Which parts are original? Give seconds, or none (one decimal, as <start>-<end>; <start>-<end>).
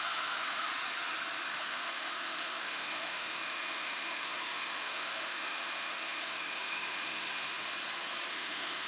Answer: 0.7-1.5; 7.7-8.3